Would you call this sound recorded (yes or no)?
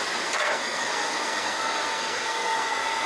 no